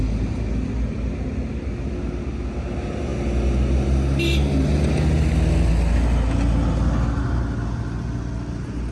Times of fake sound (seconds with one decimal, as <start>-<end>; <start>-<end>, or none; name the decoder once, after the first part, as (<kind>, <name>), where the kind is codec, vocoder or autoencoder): none